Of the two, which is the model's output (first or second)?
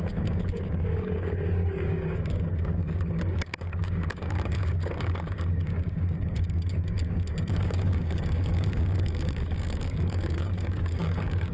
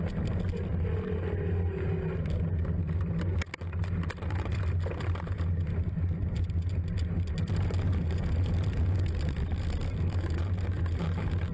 first